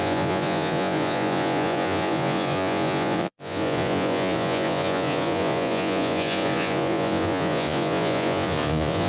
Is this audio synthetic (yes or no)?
yes